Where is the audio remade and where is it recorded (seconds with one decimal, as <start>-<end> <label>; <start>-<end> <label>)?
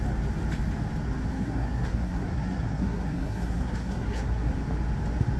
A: 0.0-1.3 recorded; 1.3-4.5 remade; 4.5-5.4 recorded